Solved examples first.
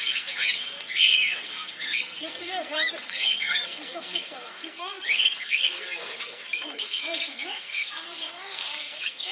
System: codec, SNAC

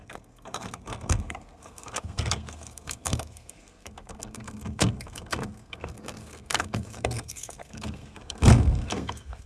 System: codec, SNAC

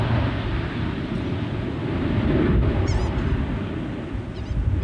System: none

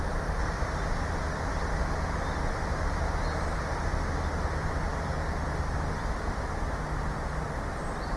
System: none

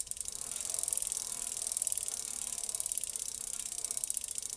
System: none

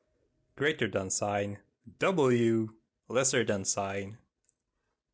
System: none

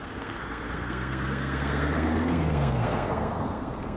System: codec, SNAC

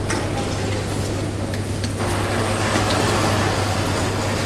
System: none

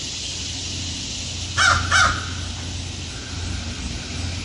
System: none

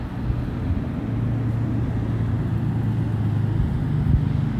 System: none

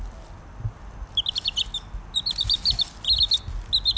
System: none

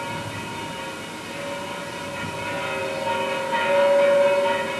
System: none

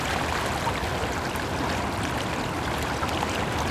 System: none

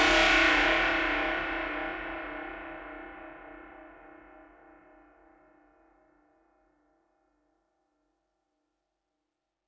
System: none